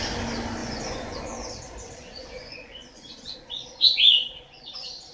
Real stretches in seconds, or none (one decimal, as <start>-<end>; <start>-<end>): 0.0-0.6; 1.2-2.0